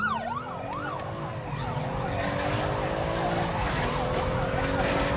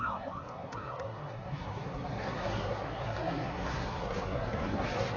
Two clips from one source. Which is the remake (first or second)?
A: second